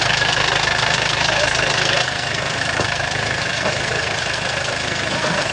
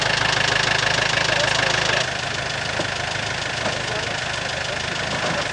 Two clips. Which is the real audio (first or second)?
second